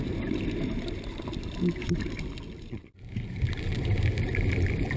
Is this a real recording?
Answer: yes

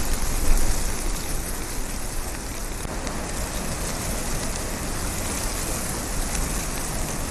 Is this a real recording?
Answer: yes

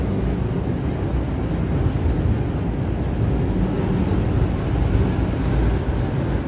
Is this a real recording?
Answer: yes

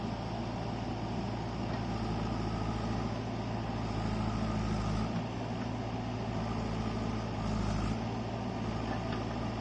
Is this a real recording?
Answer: yes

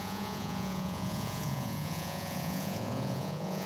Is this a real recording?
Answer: no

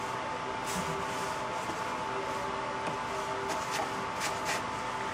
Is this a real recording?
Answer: yes